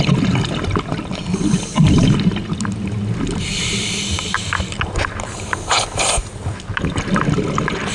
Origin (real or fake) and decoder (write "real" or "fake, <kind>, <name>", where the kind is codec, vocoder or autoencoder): real